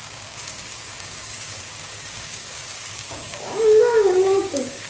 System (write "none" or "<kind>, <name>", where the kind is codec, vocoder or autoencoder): codec, DAC